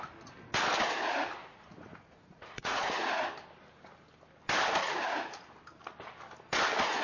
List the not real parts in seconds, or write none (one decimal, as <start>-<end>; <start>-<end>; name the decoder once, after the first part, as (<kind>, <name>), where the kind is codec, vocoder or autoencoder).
1.4-3.2 (vocoder, Vocos); 4.8-5.5